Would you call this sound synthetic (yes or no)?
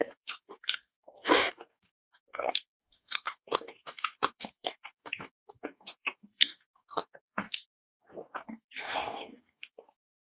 yes